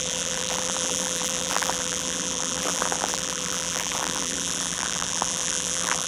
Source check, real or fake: fake